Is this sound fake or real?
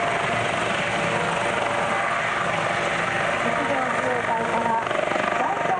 real